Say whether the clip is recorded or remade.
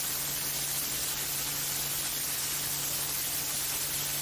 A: recorded